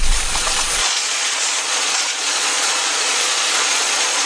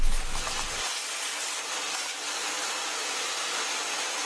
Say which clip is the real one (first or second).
second